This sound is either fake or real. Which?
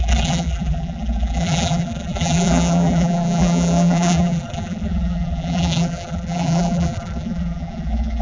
fake